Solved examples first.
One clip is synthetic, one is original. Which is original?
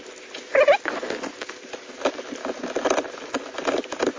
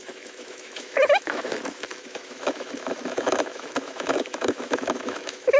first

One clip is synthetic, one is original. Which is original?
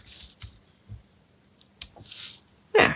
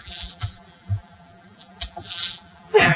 first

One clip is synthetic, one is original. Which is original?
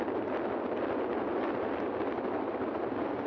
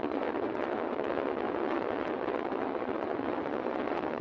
first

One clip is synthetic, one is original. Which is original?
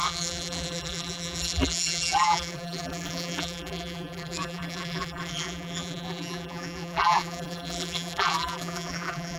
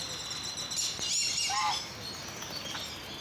second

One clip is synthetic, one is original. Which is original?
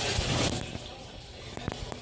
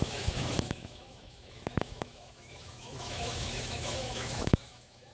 first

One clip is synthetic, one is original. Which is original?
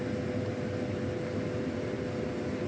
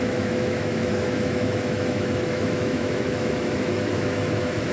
first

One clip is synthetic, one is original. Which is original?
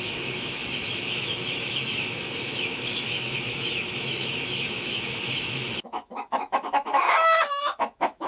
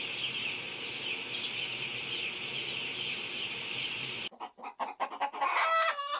second